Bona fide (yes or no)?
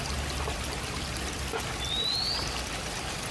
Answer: yes